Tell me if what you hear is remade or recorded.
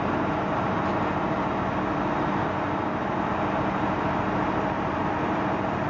recorded